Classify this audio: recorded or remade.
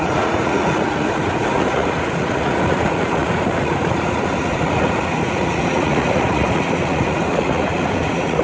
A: remade